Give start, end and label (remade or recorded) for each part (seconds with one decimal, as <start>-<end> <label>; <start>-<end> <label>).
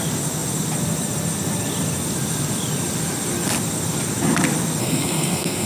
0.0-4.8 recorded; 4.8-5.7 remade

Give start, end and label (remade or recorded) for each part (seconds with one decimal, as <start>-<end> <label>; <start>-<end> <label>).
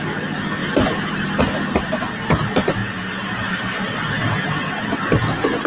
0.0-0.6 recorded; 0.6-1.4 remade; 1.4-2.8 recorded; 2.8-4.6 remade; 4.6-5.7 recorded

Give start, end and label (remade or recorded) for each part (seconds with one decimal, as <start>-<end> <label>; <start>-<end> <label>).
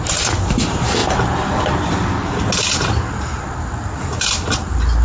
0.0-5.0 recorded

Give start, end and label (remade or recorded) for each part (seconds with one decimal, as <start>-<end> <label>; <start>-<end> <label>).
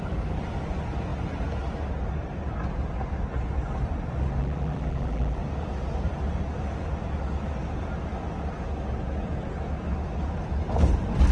0.0-4.4 recorded; 4.4-5.4 remade; 5.4-11.3 recorded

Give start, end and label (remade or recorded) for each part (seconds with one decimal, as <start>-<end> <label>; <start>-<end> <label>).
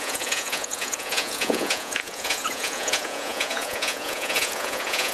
0.0-5.1 remade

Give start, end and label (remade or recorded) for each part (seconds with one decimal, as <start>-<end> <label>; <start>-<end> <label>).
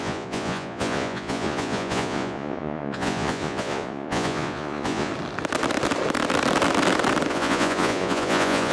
0.0-5.1 remade; 5.1-7.3 recorded; 7.3-8.7 remade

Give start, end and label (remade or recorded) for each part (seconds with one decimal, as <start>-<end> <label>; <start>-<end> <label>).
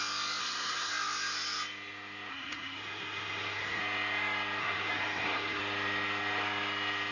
0.0-0.4 recorded; 0.4-0.9 remade; 0.9-2.3 recorded; 2.3-3.8 remade; 3.8-4.6 recorded; 4.6-5.6 remade; 5.6-7.1 recorded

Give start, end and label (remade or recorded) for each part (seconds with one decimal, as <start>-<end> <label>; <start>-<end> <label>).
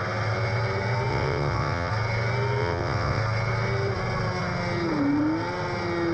0.0-1.1 recorded; 1.1-1.9 remade; 1.9-2.6 recorded; 2.6-3.2 remade; 3.2-6.1 recorded